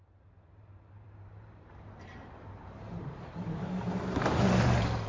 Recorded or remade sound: remade